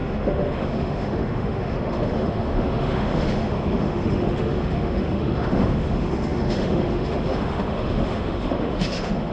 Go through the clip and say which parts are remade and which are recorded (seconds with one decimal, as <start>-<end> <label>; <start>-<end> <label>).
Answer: 0.0-9.3 remade

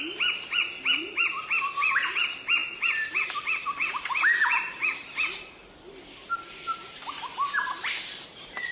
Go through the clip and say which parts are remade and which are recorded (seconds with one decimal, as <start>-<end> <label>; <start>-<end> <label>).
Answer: 0.0-8.7 recorded

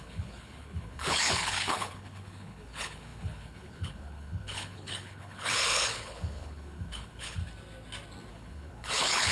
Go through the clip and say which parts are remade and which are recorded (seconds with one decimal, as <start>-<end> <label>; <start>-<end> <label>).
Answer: 0.0-7.4 remade; 7.4-8.3 recorded; 8.3-9.3 remade

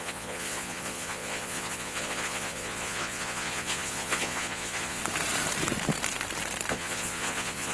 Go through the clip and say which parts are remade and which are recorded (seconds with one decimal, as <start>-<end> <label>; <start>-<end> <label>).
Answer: 0.0-5.0 remade; 5.0-6.7 recorded; 6.7-7.7 remade

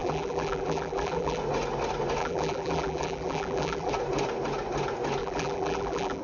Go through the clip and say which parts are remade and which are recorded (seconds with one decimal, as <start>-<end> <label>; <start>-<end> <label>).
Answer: 0.0-1.4 remade; 1.4-2.2 recorded; 2.2-3.9 remade; 3.9-5.2 recorded; 5.2-6.2 remade

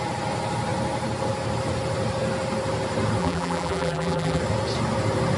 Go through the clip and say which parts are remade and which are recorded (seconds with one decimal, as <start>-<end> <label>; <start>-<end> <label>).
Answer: 0.0-3.2 recorded; 3.2-4.4 remade; 4.4-5.4 recorded

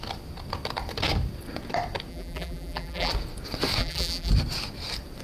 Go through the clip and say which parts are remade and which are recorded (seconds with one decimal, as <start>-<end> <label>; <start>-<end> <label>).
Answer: 0.0-2.1 recorded; 2.1-3.1 remade; 3.1-3.8 recorded; 3.8-4.3 remade; 4.3-5.2 recorded